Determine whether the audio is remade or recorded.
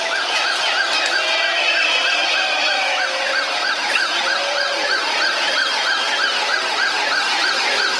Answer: remade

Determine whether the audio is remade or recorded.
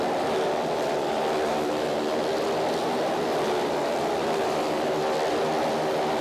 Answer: remade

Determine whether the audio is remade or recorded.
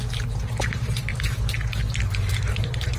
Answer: remade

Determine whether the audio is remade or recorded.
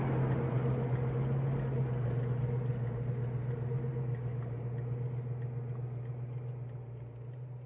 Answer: recorded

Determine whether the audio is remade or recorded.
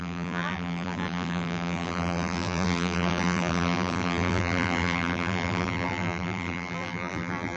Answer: remade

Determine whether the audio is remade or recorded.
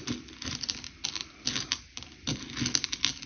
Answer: recorded